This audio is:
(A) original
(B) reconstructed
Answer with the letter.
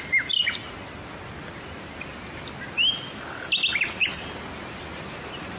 A